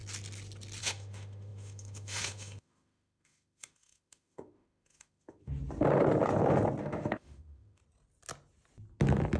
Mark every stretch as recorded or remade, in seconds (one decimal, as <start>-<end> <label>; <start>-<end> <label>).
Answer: 0.0-0.8 recorded; 0.8-5.5 remade; 5.5-6.8 recorded; 6.8-7.8 remade; 7.8-9.4 recorded

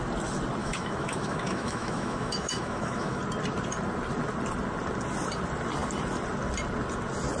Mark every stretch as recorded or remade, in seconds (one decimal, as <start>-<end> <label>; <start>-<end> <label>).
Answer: 0.0-0.6 recorded; 0.6-3.2 remade; 3.2-7.4 recorded

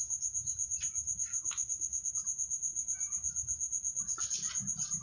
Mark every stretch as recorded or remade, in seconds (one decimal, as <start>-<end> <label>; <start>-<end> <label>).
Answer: 0.0-1.3 recorded; 1.3-2.1 remade; 2.1-5.0 recorded

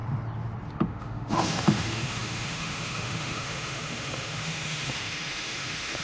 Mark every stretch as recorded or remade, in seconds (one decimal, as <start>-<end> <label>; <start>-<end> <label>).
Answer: 0.0-0.7 recorded; 0.7-6.0 remade

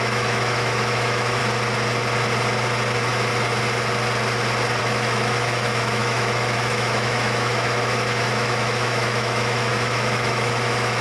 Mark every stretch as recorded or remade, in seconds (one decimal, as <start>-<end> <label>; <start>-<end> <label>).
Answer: 0.0-1.4 remade; 1.4-4.8 recorded; 4.8-11.0 remade